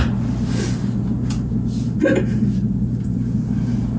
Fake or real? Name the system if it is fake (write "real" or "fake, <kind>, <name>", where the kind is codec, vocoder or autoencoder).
real